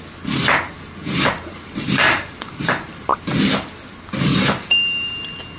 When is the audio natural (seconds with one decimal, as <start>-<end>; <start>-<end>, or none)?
0.0-1.0; 3.2-4.3; 5.1-5.6